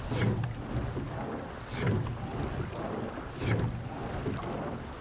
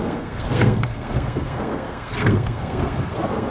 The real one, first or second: first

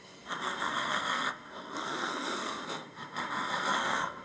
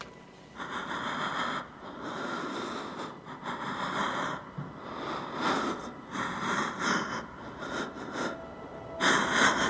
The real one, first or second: second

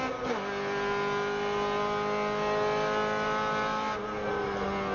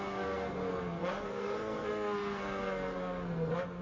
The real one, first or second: first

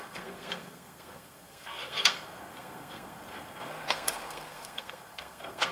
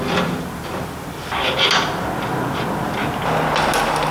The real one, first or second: second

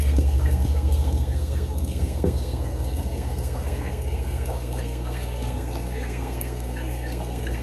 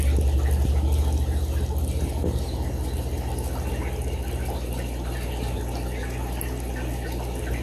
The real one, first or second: second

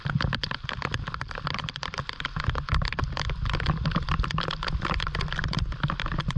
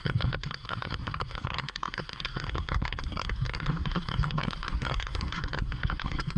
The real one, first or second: first